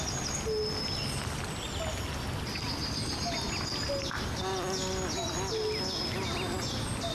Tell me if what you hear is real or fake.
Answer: real